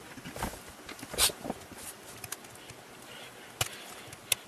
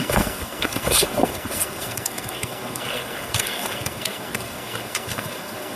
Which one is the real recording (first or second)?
first